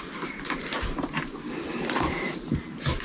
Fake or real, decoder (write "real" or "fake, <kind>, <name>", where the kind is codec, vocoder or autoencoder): fake, vocoder, BigVGAN v2